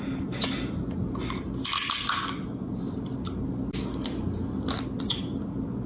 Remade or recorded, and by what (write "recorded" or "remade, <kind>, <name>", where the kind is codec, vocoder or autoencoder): recorded